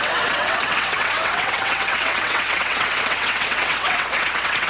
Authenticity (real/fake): fake